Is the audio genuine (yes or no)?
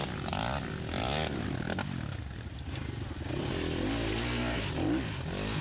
yes